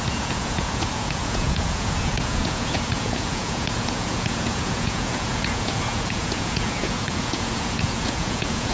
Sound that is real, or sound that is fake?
fake